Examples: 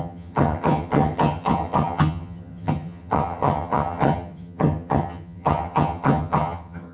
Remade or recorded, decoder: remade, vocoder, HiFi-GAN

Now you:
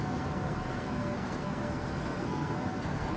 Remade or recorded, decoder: remade, codec, SNAC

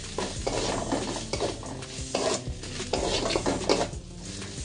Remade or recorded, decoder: recorded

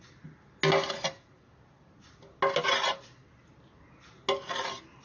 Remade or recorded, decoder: recorded